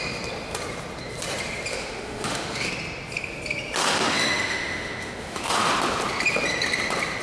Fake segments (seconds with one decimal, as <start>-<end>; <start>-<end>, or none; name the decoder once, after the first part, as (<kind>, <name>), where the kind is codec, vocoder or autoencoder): 1.7-2.7 (autoencoder, DAC-VAE); 3.8-5.7